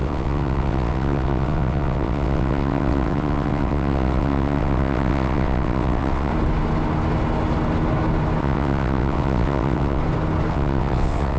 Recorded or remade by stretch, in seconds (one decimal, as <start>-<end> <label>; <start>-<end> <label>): 0.0-6.3 remade; 6.3-8.4 recorded; 8.4-10.0 remade; 10.0-10.5 recorded; 10.5-11.4 remade